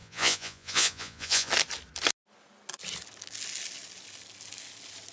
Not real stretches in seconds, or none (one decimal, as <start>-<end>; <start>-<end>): 0.0-1.5